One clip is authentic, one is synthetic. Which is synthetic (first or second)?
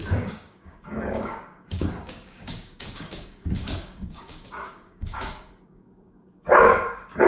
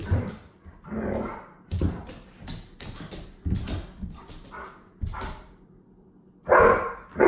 first